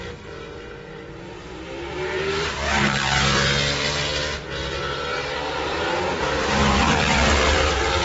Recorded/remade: remade